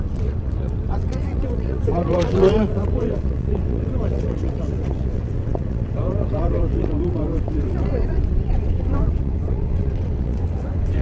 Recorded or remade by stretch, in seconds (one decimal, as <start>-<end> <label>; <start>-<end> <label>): 0.0-11.0 remade